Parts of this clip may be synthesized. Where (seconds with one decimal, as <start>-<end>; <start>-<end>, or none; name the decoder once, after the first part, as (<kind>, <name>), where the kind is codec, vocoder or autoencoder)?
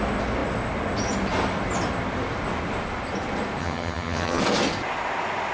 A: 3.6-4.4 (vocoder, HiFi-GAN)